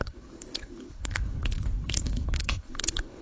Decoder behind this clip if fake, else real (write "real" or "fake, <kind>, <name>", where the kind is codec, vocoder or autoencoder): fake, codec, HILCodec